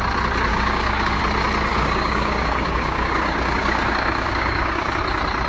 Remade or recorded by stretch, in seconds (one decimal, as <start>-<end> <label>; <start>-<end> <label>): 0.0-0.5 recorded; 0.5-1.2 remade; 1.2-1.7 recorded; 1.7-5.0 remade; 5.0-5.5 recorded